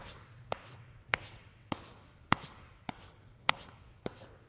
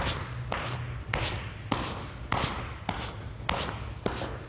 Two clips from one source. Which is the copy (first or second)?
first